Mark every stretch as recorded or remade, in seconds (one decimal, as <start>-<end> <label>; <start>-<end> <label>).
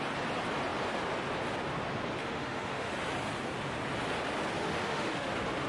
0.0-2.2 recorded; 2.2-2.9 remade; 2.9-4.6 recorded; 4.6-5.3 remade; 5.3-5.7 recorded